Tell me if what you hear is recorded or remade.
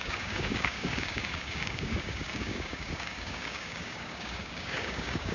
remade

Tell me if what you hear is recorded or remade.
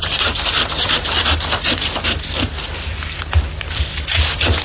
recorded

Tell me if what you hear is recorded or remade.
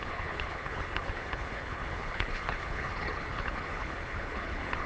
remade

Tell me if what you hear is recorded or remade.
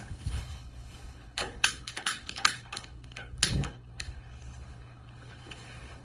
remade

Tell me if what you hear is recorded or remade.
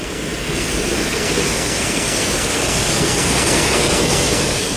remade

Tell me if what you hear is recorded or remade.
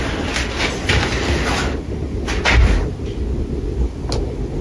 recorded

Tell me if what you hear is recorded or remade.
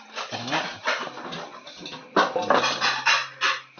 recorded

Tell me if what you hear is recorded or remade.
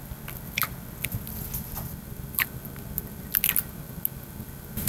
recorded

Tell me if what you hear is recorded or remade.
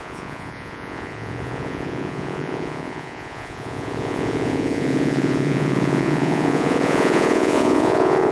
remade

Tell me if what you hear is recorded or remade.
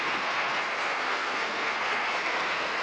remade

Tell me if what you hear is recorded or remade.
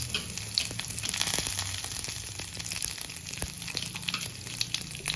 recorded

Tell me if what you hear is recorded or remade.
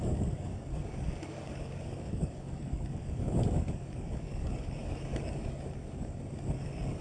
remade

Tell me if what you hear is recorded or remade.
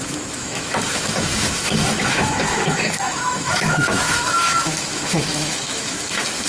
remade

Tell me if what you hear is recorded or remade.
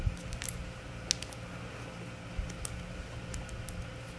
recorded